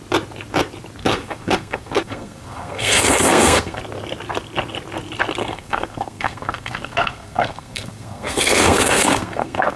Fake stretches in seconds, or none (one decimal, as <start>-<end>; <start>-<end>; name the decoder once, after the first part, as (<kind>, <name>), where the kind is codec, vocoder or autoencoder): 1.0-3.8 (codec, SNAC); 5.4-9.8